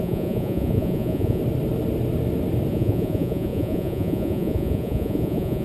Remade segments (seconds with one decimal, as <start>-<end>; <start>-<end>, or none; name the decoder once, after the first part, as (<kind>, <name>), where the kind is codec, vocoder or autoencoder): 0.0-1.4 (vocoder, Vocos); 2.7-5.6